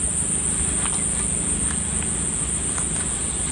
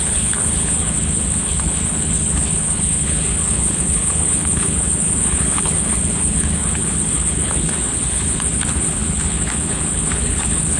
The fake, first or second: second